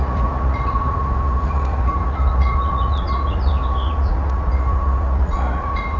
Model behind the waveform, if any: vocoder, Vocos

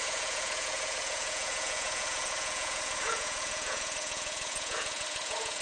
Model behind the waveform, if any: vocoder, Vocos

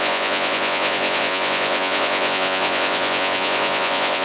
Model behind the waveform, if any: vocoder, Vocos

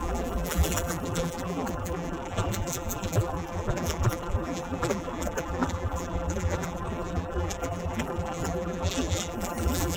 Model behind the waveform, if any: vocoder, BigVGAN v2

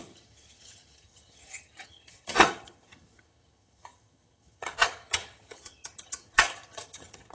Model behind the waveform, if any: vocoder, HiFi-GAN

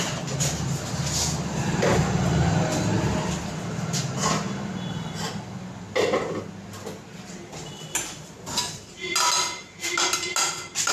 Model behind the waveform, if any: none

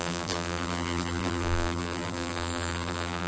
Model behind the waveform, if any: vocoder, BigVGAN v2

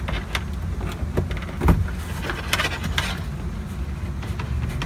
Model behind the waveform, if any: none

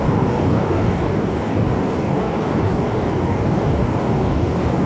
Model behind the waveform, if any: codec, DAC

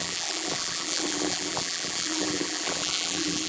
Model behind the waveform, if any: vocoder, BigVGAN v2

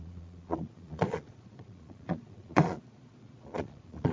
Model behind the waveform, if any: vocoder, Vocos